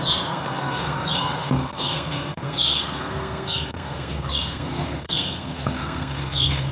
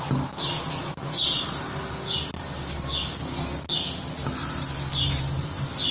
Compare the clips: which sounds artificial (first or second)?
first